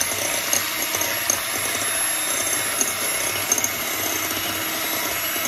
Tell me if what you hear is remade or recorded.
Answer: recorded